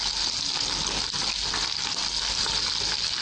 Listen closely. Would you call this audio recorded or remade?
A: recorded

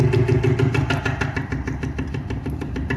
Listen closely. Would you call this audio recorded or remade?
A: recorded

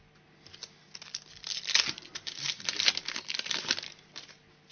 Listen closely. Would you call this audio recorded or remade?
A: recorded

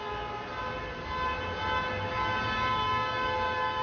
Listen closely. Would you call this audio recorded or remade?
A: recorded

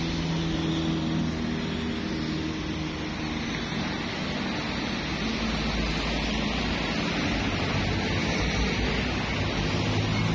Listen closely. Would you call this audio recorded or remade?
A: recorded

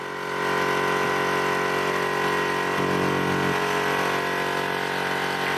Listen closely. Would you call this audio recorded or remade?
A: recorded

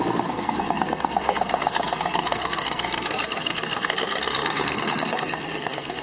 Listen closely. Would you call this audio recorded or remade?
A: remade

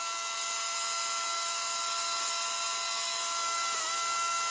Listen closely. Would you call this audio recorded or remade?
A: recorded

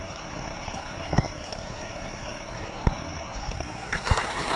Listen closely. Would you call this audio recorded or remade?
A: remade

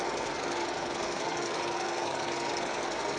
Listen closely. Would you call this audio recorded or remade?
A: remade